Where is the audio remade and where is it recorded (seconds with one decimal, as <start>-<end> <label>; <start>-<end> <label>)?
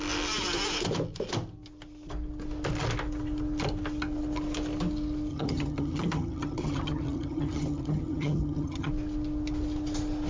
0.0-5.3 recorded; 5.3-8.9 remade; 8.9-10.3 recorded